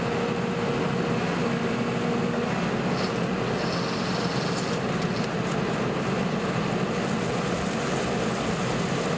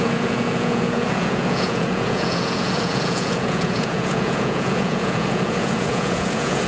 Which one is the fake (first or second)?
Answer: second